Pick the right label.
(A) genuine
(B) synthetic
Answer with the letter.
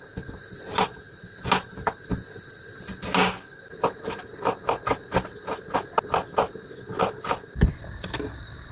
A